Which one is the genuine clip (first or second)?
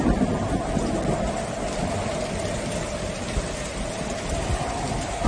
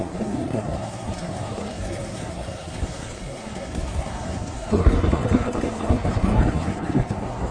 first